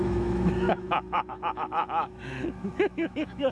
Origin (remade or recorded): remade